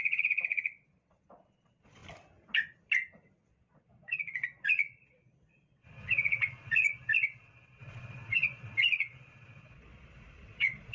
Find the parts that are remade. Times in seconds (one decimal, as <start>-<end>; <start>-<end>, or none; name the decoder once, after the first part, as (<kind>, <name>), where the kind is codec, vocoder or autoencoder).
0.0-2.0 (vocoder, Vocos); 3.5-10.9